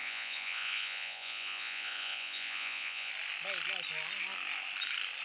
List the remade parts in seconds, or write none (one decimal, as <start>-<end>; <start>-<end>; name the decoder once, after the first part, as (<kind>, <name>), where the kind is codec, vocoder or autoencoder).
0.0-3.1 (vocoder, Vocos)

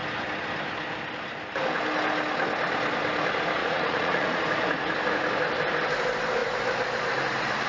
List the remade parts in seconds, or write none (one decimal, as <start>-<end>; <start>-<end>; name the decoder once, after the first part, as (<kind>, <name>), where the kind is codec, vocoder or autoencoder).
3.6-4.4 (vocoder, Vocos)

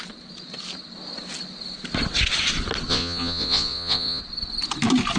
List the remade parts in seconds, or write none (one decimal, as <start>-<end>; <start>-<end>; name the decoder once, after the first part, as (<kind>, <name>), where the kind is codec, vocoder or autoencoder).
2.9-4.2 (vocoder, Vocos)

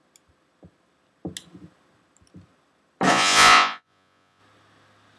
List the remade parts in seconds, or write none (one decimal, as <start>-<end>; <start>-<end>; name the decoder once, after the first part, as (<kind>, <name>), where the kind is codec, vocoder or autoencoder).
3.1-4.4 (vocoder, Vocos)

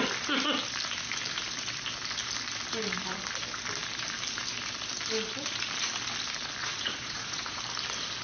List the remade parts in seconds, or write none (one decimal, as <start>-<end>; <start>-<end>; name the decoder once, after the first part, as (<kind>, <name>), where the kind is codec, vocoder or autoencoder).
6.6-7.6 (vocoder, Vocos)

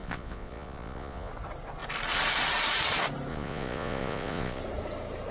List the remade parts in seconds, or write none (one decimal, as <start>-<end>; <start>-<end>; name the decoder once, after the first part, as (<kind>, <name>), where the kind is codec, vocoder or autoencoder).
0.0-1.3 (vocoder, Vocos); 3.3-4.6